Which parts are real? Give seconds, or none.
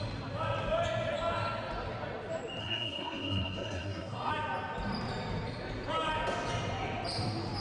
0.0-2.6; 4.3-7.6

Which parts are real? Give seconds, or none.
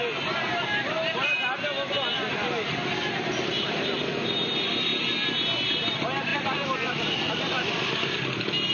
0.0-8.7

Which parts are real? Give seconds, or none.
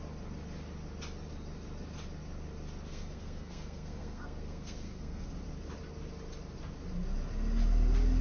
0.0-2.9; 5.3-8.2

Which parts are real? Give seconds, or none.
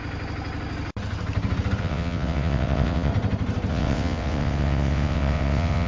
0.0-1.8; 3.1-3.7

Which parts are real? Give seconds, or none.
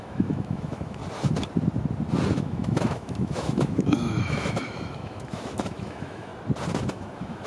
1.0-2.3; 6.3-6.9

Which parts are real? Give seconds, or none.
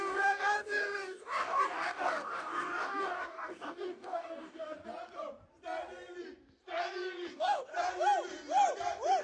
4.8-7.3; 7.7-9.2